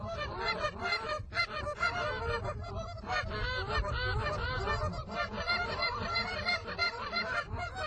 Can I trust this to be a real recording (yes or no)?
yes